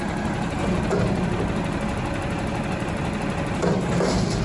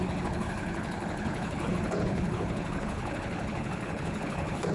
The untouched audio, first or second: first